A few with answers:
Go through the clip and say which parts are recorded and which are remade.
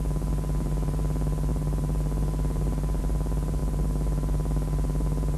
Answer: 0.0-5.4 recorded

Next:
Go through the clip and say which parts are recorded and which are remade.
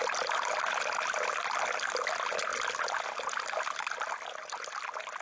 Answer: 0.0-5.2 recorded